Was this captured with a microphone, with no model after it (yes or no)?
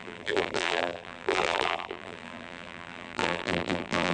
no